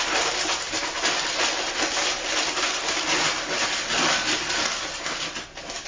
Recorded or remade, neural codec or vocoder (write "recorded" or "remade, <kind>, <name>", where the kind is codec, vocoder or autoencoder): recorded